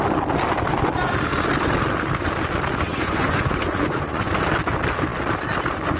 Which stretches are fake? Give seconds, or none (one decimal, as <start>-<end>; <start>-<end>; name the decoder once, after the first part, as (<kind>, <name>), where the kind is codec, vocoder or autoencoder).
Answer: 2.9-4.3 (vocoder, Vocos)